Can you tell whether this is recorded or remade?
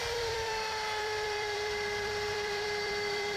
remade